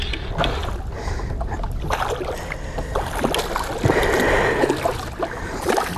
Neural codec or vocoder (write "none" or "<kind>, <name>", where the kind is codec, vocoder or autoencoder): none